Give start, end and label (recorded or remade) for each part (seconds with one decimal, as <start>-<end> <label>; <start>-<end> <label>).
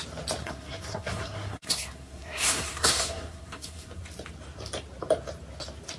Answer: 0.0-0.4 recorded; 0.4-4.0 remade; 4.0-6.0 recorded